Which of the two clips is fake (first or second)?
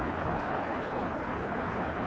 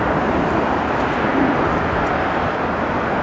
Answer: first